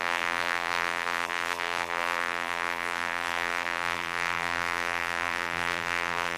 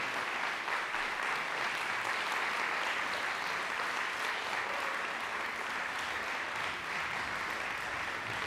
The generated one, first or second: first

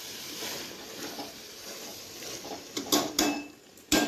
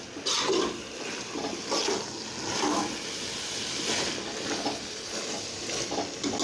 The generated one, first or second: first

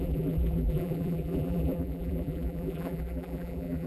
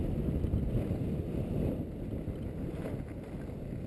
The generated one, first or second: first